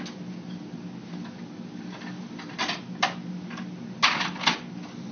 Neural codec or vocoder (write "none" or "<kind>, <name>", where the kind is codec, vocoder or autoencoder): none